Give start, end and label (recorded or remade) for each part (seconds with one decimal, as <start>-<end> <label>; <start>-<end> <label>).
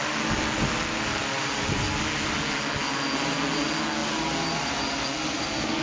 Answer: 0.0-5.8 recorded